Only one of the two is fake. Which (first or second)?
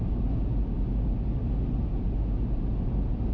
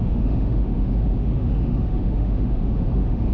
second